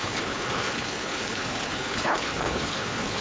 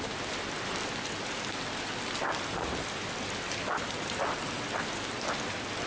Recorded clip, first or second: second